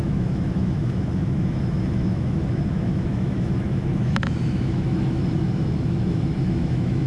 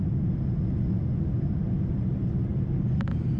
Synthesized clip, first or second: first